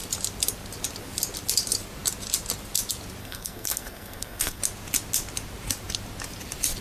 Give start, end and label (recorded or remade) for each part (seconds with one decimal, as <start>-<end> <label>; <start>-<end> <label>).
0.0-3.2 recorded; 3.2-4.6 remade; 4.6-6.8 recorded